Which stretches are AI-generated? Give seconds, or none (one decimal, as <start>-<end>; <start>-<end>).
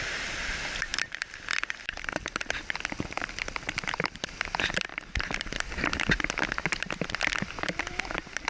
0.0-4.9; 7.4-8.5